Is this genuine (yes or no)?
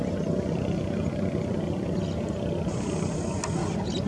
yes